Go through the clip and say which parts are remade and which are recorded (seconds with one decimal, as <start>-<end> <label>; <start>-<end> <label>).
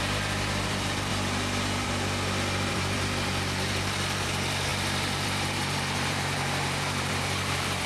0.0-1.1 remade; 1.1-2.7 recorded; 2.7-7.9 remade